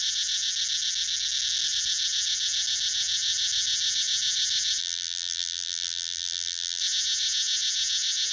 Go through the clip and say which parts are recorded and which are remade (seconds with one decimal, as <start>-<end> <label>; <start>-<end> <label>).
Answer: 0.0-4.8 recorded; 4.8-6.8 remade; 6.8-8.3 recorded